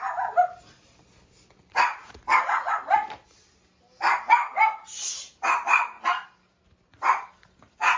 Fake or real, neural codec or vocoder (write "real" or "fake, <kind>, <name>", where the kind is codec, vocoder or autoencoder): real